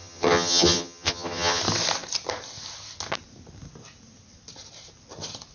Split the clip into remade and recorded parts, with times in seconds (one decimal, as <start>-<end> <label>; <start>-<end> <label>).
0.0-1.6 remade; 1.6-5.5 recorded

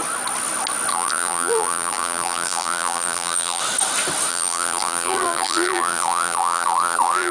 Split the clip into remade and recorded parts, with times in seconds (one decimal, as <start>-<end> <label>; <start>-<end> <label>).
0.0-0.9 recorded; 0.9-3.6 remade; 3.6-4.3 recorded; 4.3-7.3 remade

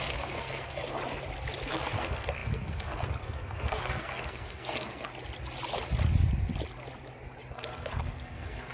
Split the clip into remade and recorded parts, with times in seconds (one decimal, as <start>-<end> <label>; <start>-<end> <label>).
0.0-1.0 remade; 1.0-1.7 recorded; 1.7-5.1 remade; 5.1-7.5 recorded; 7.5-8.7 remade

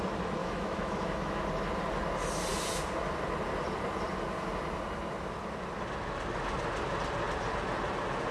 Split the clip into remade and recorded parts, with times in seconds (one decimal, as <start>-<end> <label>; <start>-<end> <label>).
0.0-0.4 recorded; 0.4-1.3 remade; 1.3-8.3 recorded

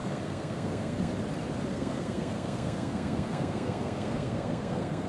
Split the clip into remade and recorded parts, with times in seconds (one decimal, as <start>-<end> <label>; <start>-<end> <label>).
0.0-1.1 remade; 1.1-1.7 recorded; 1.7-5.1 remade

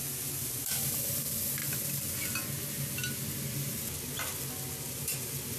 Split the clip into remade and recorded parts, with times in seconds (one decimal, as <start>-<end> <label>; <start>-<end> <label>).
0.0-5.6 recorded

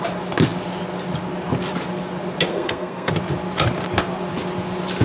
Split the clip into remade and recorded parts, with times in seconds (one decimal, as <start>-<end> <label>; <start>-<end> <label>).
0.0-2.5 recorded; 2.5-3.1 remade; 3.1-5.0 recorded

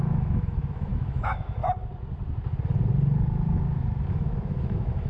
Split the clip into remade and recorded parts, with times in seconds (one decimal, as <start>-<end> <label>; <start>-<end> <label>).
0.0-1.6 remade; 1.6-4.1 recorded; 4.1-5.1 remade